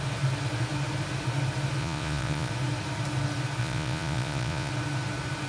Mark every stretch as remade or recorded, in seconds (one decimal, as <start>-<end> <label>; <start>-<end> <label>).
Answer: 0.0-1.8 recorded; 1.8-2.5 remade; 2.5-3.6 recorded; 3.6-4.7 remade; 4.7-5.5 recorded